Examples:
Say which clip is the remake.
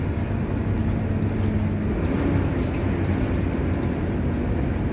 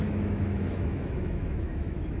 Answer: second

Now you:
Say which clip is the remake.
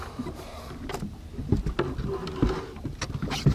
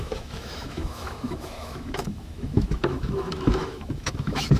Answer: second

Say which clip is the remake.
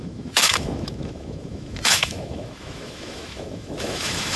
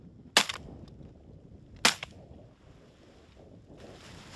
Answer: first